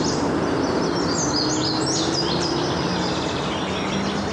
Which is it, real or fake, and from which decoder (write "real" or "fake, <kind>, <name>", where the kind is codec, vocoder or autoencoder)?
real